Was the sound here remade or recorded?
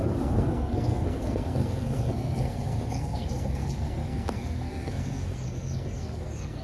remade